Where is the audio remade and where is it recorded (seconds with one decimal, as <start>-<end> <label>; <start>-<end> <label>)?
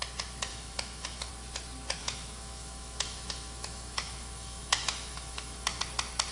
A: 0.0-0.5 recorded; 0.5-1.3 remade; 1.3-2.0 recorded; 2.0-5.8 remade; 5.8-6.3 recorded